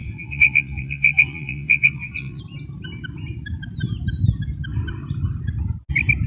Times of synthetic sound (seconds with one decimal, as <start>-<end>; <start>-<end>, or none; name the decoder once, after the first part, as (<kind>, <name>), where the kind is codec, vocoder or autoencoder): 0.0-2.4 (vocoder, WaveNeXt)